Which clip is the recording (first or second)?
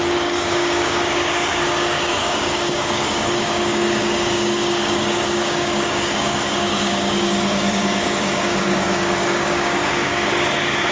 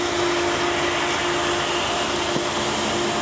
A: second